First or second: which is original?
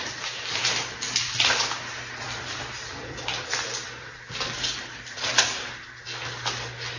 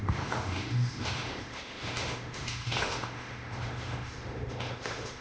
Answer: first